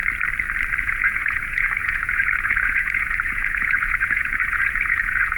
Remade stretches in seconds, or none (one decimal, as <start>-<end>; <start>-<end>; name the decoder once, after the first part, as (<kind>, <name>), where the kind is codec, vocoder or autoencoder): 0.8-5.4 (vocoder, Vocos)